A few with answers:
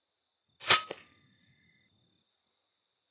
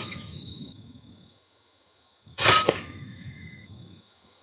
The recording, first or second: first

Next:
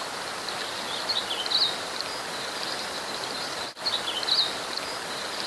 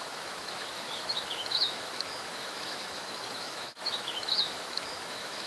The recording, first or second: first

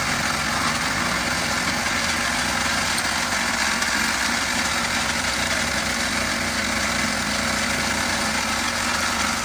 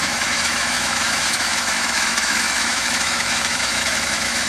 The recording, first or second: first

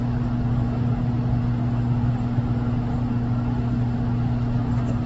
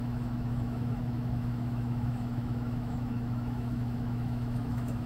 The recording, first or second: first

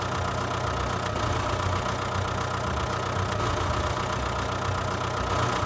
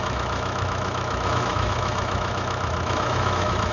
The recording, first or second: first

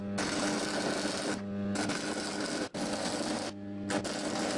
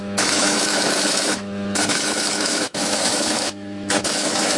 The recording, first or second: first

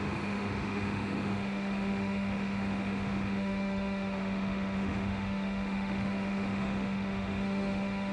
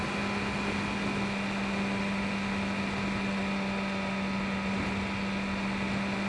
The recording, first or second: second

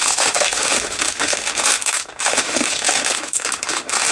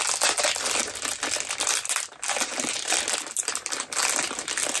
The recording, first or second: second